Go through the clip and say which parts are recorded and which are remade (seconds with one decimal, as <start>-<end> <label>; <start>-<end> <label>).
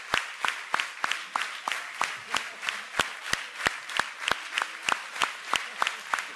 0.0-6.4 recorded